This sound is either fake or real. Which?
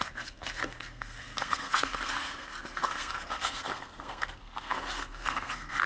fake